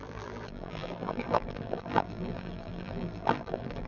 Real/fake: fake